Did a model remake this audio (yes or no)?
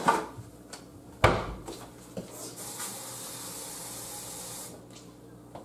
no